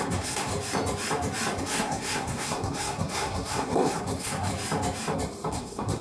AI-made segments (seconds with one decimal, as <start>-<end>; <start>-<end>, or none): 0.0-0.5; 1.6-4.5; 5.5-6.0